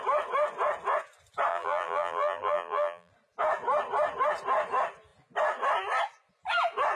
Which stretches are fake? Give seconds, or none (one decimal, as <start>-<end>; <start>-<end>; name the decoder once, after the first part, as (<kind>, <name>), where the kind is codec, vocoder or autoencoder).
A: 1.5-3.1 (vocoder, BigVGAN v2)